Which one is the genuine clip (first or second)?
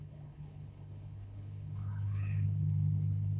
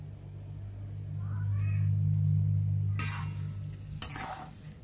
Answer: second